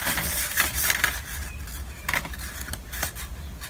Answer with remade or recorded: recorded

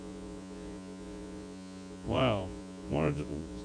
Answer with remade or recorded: remade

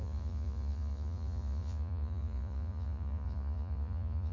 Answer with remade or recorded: remade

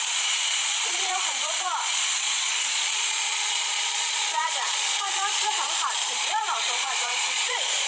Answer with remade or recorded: remade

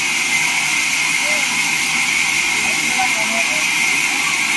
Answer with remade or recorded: recorded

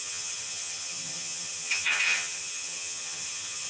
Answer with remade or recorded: remade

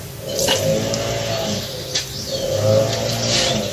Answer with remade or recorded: recorded